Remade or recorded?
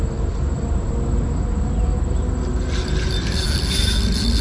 recorded